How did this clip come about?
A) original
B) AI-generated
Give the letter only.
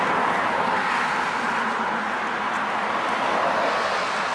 A